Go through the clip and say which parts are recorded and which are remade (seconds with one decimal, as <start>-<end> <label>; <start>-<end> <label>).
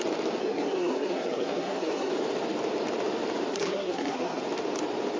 0.0-0.4 recorded; 0.4-2.1 remade; 2.1-3.5 recorded; 3.5-4.4 remade; 4.4-5.2 recorded